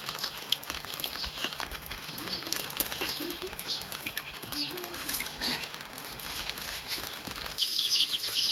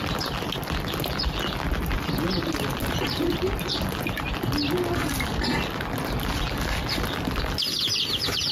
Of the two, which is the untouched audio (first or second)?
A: second